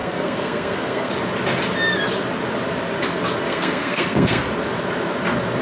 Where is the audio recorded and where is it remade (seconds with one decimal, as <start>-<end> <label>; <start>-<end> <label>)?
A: 0.0-1.1 remade; 1.1-3.5 recorded; 3.5-4.5 remade; 4.5-5.6 recorded